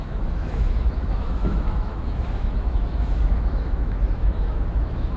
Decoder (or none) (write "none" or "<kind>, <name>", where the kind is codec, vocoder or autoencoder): autoencoder, DAC-VAE